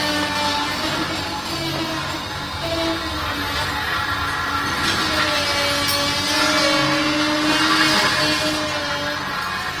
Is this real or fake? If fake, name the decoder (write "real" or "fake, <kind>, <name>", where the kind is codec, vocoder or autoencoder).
real